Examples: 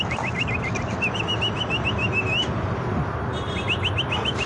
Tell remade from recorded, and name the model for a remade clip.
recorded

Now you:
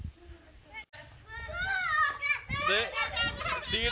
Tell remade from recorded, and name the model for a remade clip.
recorded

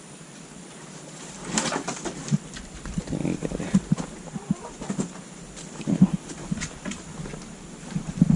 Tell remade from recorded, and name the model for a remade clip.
recorded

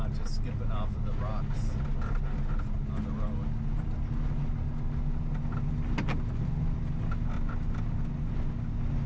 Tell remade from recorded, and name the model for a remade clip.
recorded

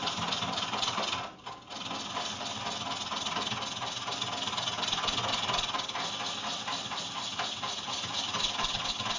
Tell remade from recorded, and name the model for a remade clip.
recorded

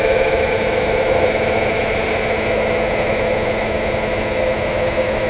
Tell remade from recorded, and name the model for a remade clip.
remade, autoencoder, DAC-VAE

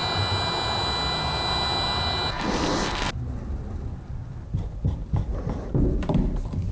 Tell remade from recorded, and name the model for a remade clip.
recorded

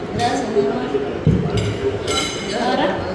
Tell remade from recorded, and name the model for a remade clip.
recorded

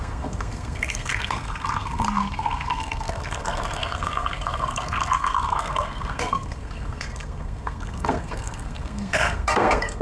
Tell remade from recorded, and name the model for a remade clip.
remade, codec, SNAC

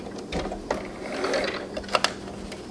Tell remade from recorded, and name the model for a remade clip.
recorded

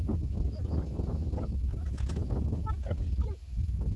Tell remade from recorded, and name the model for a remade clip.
recorded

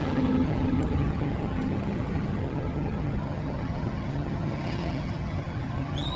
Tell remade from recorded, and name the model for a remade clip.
remade, vocoder, HiFi-GAN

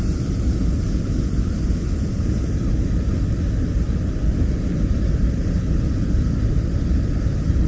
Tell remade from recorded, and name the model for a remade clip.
recorded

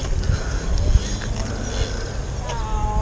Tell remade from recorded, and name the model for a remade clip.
recorded